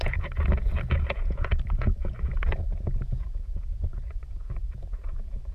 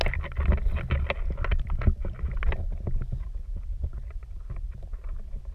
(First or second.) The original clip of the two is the second